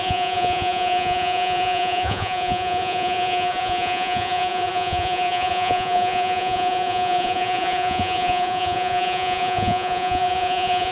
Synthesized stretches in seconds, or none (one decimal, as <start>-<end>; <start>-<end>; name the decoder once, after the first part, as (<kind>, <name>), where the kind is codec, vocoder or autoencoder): 0.0-10.9 (vocoder, Vocos)